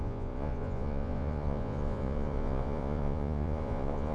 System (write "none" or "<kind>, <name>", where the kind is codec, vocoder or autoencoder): vocoder, Vocos